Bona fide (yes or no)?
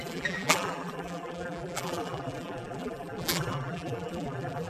no